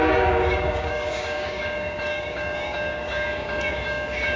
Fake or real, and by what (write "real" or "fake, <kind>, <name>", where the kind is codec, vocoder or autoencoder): fake, codec, DAC